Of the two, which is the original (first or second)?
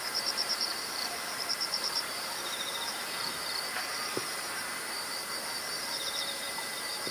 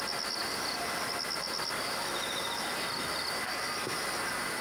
second